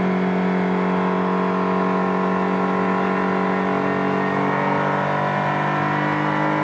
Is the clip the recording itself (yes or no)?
yes